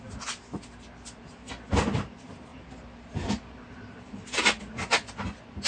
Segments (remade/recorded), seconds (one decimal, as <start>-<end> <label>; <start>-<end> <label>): 0.0-2.5 recorded; 2.5-4.6 remade; 4.6-5.7 recorded